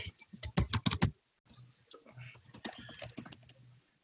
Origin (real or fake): real